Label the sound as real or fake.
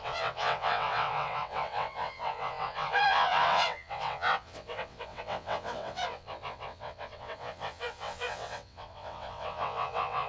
fake